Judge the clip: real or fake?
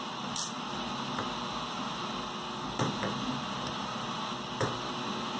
real